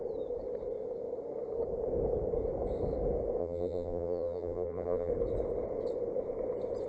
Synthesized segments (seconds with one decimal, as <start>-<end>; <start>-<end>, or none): 3.4-5.1